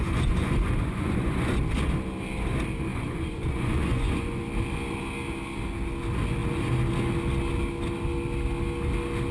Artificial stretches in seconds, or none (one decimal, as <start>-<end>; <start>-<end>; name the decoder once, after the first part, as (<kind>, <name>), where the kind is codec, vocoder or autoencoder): 0.0-1.6 (vocoder, Vocos); 2.9-4.4